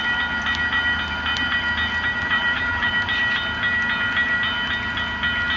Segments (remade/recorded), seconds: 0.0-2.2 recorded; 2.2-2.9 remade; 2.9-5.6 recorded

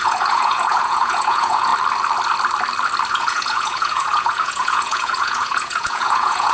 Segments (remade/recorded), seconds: 0.0-1.7 remade; 1.7-3.1 recorded; 3.1-6.5 remade

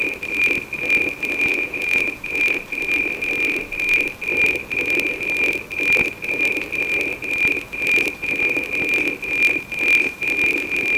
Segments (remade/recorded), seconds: 0.0-1.5 recorded; 1.5-2.4 remade; 2.4-11.0 recorded

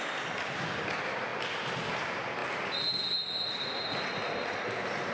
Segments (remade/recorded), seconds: 0.0-5.1 recorded

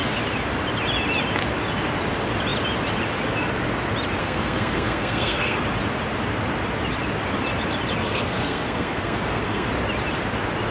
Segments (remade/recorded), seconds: 0.0-4.2 recorded; 4.2-5.6 remade; 5.6-8.0 recorded; 8.0-9.7 remade; 9.7-10.7 recorded

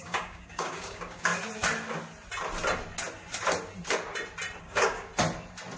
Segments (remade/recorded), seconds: 0.0-1.3 remade; 1.3-4.6 recorded; 4.6-5.1 remade; 5.1-5.8 recorded

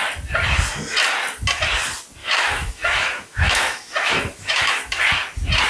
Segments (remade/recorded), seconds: 0.0-2.2 recorded; 2.2-5.0 remade; 5.0-5.7 recorded

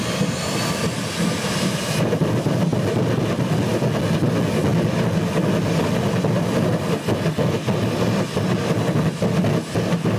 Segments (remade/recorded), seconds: 0.0-10.2 recorded